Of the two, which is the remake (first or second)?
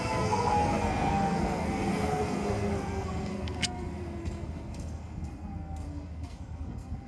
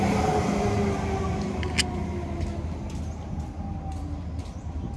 first